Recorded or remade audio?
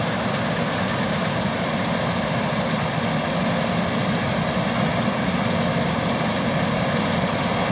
recorded